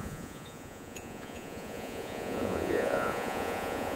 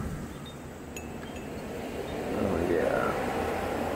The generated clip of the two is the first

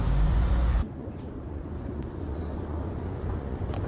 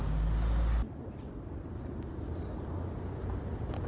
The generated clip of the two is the first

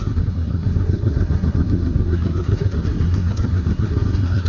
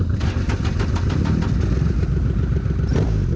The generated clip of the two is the first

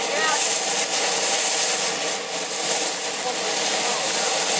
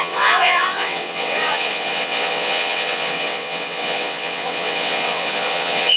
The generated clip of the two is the second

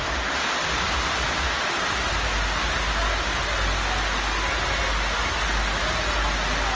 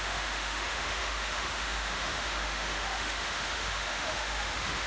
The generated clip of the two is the second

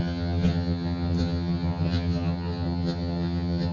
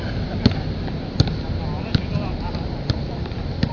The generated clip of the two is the first